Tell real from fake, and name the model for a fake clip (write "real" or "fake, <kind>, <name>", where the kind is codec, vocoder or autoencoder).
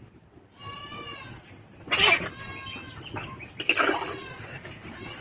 real